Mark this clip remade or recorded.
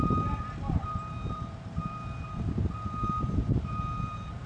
remade